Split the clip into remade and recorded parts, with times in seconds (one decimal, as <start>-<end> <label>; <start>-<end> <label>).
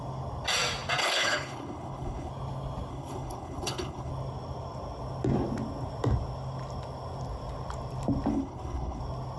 0.0-1.0 recorded; 1.0-2.3 remade; 2.3-2.9 recorded; 2.9-4.1 remade; 4.1-8.3 recorded; 8.3-9.0 remade; 9.0-9.4 recorded